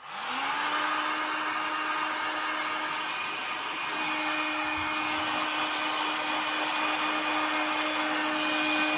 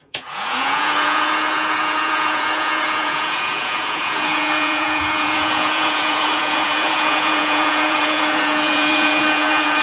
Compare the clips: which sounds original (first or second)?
first